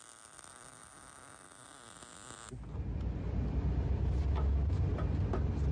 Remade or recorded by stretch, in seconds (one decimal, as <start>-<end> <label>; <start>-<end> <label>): 0.0-5.7 recorded